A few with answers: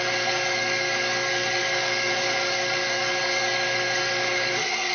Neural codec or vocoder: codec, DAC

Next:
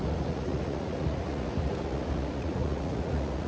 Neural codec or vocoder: vocoder, Vocos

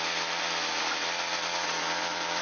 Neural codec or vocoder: none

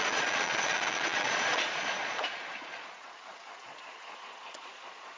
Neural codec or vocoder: vocoder, Vocos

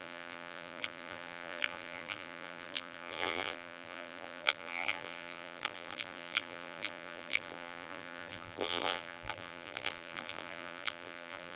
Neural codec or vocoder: vocoder, BigVGAN v2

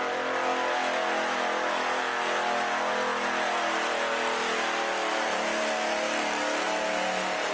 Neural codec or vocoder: none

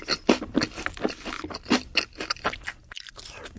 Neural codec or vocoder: none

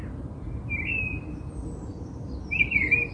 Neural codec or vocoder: none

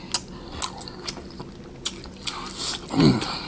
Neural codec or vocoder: none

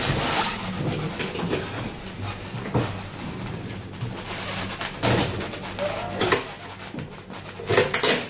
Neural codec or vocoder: none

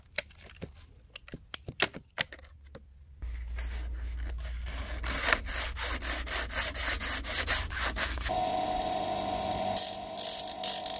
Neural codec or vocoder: none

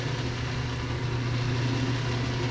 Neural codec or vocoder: none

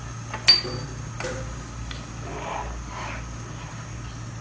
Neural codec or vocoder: none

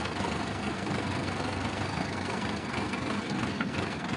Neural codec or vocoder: codec, SNAC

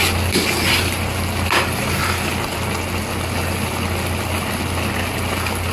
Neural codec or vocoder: none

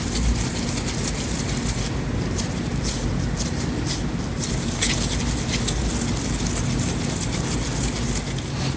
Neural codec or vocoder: none